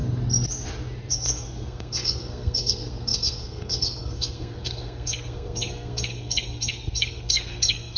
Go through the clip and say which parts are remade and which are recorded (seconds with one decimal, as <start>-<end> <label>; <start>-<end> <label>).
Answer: 0.0-1.1 recorded; 1.1-8.0 remade